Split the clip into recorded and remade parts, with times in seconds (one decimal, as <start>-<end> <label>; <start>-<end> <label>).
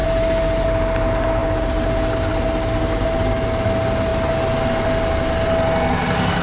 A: 0.0-6.4 recorded